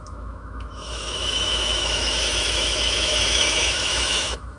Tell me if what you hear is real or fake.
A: fake